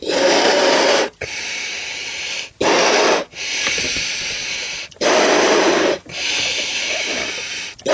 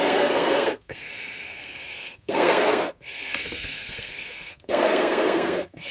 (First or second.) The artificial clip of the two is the second